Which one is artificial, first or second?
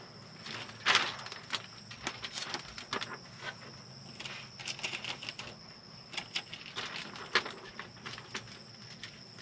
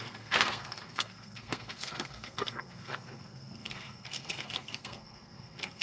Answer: second